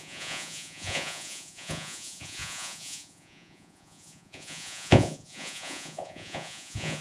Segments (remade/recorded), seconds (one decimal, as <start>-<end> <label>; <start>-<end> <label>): 0.0-7.0 remade